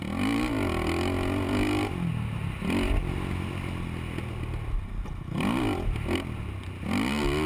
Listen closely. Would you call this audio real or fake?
real